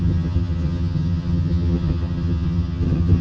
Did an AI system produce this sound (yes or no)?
yes